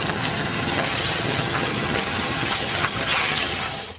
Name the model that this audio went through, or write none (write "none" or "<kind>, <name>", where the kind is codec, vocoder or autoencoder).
vocoder, HiFi-GAN